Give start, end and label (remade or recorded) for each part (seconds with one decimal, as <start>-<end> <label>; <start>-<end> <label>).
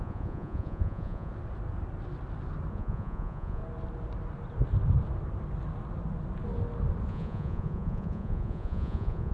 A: 0.0-1.3 remade; 1.3-2.7 recorded; 2.7-3.6 remade; 3.6-7.1 recorded; 7.1-9.3 remade